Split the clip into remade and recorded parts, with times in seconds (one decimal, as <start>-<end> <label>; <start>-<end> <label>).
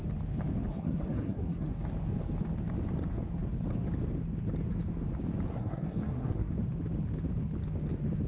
0.0-0.7 recorded; 0.7-1.7 remade; 1.7-5.5 recorded; 5.5-6.5 remade; 6.5-8.3 recorded